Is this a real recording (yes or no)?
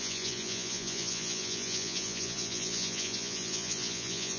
no